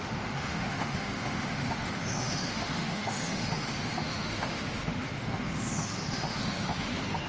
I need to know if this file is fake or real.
fake